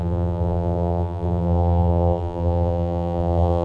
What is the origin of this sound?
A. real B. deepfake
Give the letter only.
B